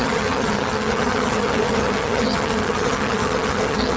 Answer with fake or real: fake